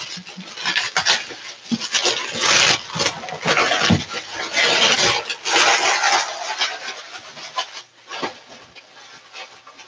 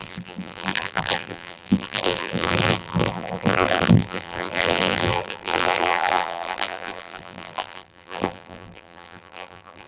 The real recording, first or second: first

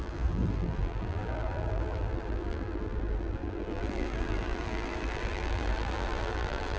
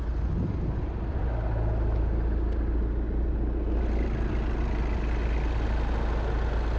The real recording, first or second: second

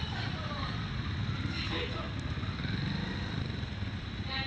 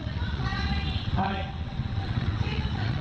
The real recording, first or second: first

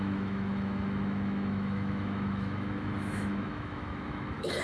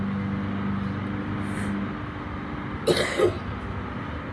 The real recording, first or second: second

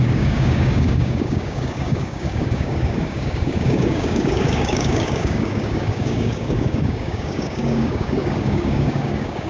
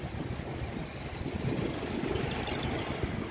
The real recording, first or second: second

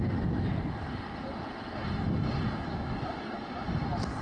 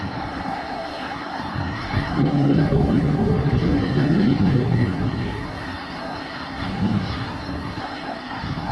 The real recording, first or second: first